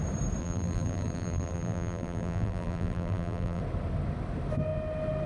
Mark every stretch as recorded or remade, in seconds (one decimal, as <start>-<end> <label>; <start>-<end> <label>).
0.0-0.4 recorded; 0.4-3.6 remade; 3.6-5.3 recorded